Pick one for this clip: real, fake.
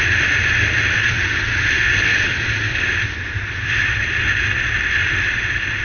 real